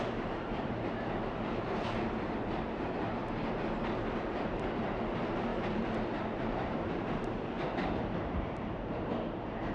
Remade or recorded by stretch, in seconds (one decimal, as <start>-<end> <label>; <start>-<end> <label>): 0.0-3.2 remade; 3.2-4.2 recorded; 4.2-9.7 remade